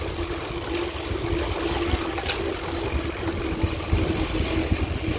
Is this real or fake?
real